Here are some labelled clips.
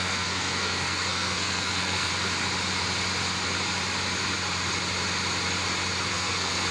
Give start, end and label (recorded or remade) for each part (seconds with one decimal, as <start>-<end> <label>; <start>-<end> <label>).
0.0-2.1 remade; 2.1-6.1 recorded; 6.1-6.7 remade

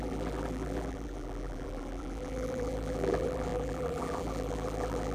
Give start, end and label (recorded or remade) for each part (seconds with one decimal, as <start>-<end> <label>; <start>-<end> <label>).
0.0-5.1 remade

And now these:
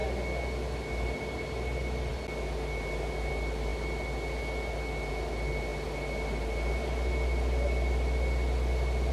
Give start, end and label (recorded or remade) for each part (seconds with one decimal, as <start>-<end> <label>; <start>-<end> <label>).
0.0-9.1 recorded

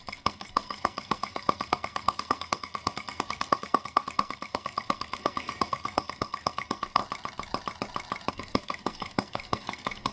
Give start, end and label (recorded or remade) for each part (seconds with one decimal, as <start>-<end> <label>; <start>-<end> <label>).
0.0-7.0 remade; 7.0-8.3 recorded; 8.3-10.1 remade

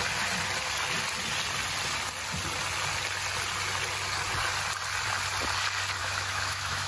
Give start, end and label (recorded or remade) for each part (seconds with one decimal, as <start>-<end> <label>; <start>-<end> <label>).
0.0-6.0 recorded; 6.0-6.9 remade

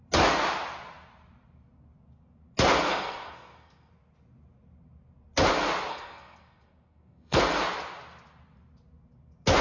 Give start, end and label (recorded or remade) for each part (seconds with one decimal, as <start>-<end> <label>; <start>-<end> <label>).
0.0-2.9 recorded; 2.9-3.9 remade; 3.9-5.9 recorded; 5.9-7.4 remade; 7.4-9.6 recorded